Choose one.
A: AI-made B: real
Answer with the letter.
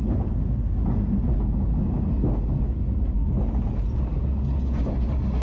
B